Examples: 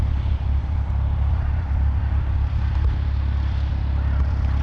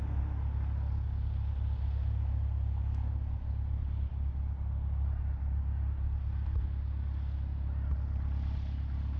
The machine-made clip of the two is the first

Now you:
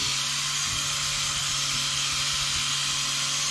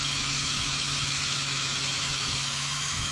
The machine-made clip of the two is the second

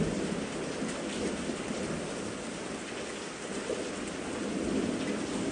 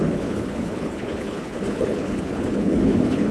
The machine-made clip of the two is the second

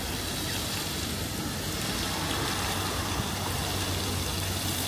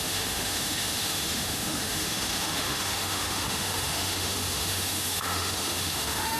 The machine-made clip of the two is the second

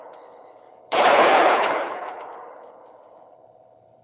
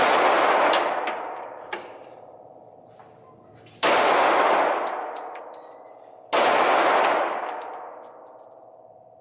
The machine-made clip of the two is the first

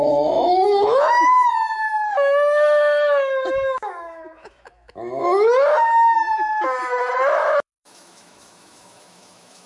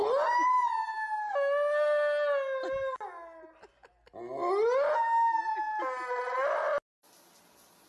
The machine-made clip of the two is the first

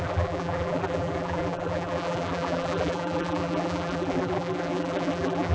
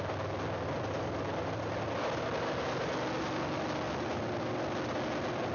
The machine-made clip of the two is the first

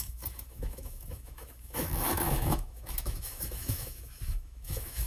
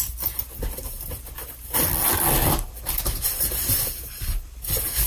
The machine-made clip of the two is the first